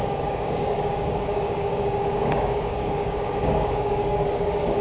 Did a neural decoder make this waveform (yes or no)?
yes